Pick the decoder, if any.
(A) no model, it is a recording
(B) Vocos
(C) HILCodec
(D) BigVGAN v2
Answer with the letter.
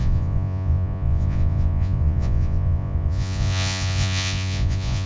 B